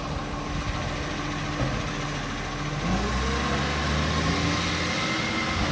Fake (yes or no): no